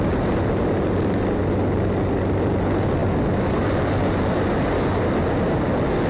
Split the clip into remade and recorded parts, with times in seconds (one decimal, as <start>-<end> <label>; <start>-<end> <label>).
0.0-6.1 recorded